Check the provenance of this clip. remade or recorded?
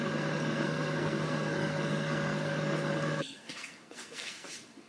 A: remade